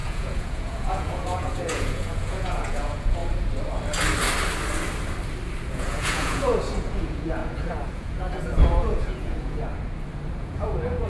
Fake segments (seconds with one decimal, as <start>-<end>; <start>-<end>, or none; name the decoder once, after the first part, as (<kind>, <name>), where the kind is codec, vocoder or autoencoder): 0.0-3.2 (vocoder, Vocos); 5.7-9.7; 10.4-11.1